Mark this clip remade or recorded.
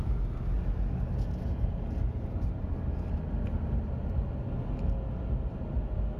recorded